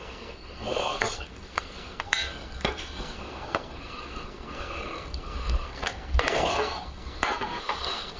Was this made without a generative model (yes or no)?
no